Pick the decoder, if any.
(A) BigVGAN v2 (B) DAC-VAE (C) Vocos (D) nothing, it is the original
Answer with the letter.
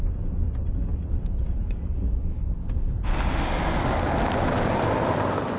D